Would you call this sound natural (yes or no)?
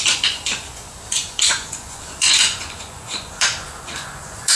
no